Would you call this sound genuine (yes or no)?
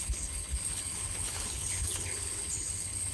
no